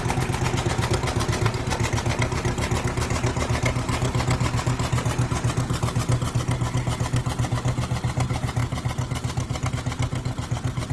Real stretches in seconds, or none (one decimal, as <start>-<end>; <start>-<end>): 0.0-10.9